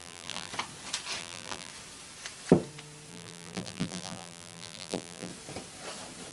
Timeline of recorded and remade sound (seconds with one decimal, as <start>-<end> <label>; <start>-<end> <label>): 0.0-0.5 remade; 0.5-1.2 recorded; 1.2-1.7 remade; 1.7-3.1 recorded; 3.1-5.3 remade; 5.3-6.3 recorded